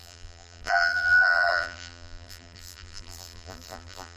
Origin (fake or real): fake